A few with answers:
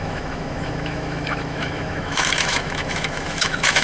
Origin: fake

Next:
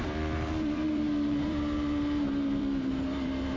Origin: fake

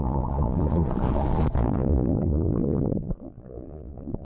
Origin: fake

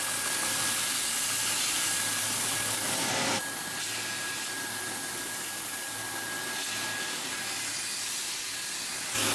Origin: real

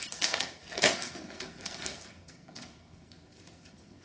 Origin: fake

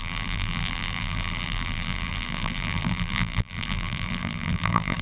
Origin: fake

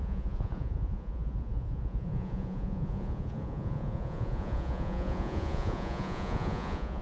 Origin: fake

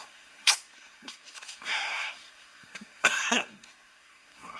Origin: fake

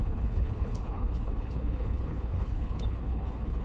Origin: fake